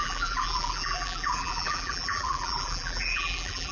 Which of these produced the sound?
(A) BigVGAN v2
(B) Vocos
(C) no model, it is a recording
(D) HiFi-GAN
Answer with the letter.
A